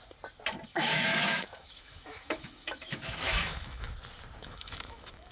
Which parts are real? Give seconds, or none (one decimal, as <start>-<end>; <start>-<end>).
0.0-0.7; 3.9-4.4